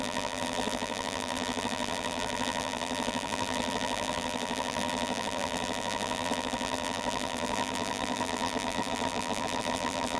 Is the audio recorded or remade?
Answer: remade